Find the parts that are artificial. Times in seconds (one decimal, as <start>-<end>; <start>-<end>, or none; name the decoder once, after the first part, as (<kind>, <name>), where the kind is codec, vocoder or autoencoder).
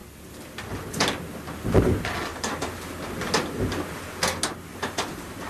2.3-2.8 (vocoder, BigVGAN v2); 4.7-5.5